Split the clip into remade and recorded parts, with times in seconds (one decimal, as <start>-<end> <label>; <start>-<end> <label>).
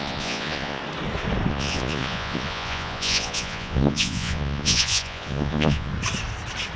0.0-0.8 remade; 0.8-1.5 recorded; 1.5-5.9 remade; 5.9-6.8 recorded